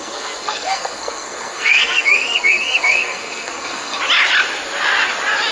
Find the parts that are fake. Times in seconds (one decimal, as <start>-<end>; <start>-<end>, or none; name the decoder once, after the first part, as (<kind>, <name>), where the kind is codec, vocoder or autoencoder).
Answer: 0.0-4.0 (codec, SNAC)